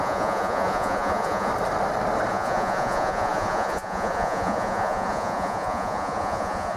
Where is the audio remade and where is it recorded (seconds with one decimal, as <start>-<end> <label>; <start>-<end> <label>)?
0.0-1.5 remade; 1.5-2.3 recorded; 2.3-6.8 remade